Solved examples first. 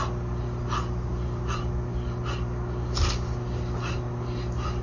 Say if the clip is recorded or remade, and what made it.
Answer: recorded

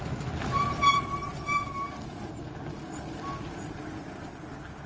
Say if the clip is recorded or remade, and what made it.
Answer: recorded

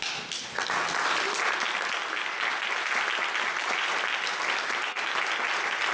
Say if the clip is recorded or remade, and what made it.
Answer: recorded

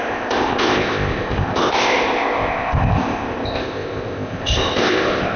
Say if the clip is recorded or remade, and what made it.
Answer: remade, codec, ZipCodec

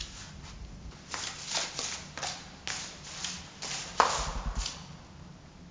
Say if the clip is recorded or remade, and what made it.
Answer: recorded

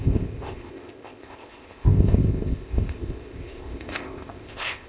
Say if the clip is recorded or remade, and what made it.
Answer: remade, codec, ZipCodec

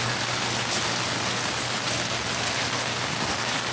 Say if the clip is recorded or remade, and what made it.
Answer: recorded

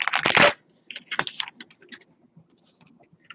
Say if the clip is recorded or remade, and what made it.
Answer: recorded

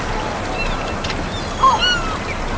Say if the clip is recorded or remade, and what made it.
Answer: recorded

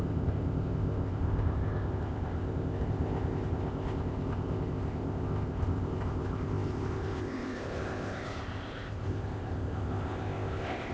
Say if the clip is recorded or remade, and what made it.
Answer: remade, codec, ZipCodec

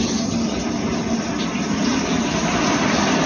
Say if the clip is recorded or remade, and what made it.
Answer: recorded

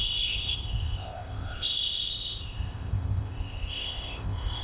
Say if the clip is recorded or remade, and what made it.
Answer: remade, codec, ZipCodec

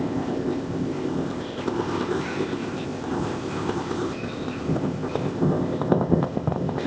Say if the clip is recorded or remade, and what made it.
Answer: remade, codec, ZipCodec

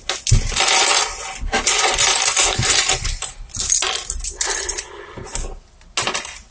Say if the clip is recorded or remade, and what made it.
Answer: recorded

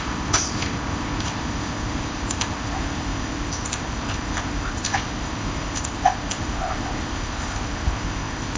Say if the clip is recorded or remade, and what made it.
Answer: remade, codec, ZipCodec